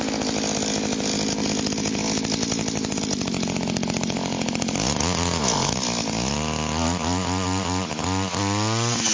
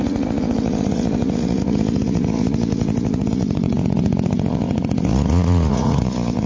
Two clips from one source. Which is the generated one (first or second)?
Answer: second